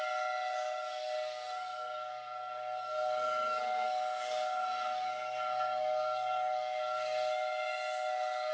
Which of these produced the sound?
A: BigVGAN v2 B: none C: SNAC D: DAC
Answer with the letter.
C